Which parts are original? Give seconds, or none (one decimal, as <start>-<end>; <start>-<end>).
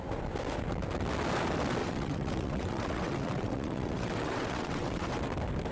0.0-1.8; 5.2-5.7